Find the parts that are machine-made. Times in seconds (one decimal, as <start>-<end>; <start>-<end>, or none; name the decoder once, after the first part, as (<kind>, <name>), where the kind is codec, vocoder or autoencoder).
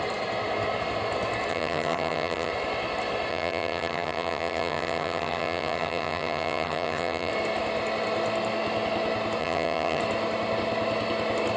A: 1.5-2.5 (vocoder, HiFi-GAN); 3.3-7.3; 9.4-10.0